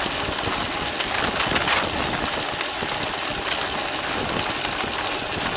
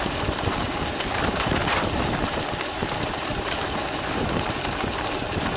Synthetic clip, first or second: second